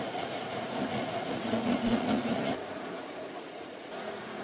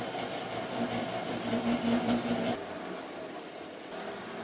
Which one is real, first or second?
second